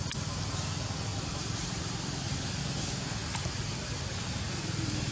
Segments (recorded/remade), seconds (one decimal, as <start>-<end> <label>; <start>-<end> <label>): 0.0-1.1 recorded; 1.1-2.6 remade; 2.6-5.1 recorded